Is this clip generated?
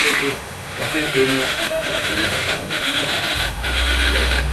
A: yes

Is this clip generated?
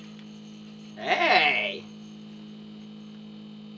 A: no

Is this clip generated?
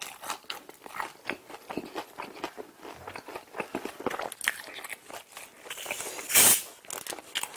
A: no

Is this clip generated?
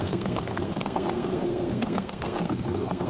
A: yes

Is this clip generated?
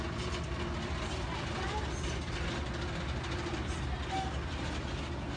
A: no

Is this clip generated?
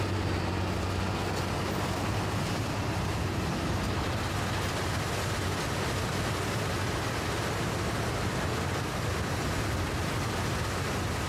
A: no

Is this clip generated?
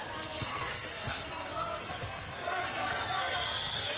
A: yes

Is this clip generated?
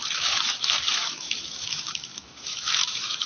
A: yes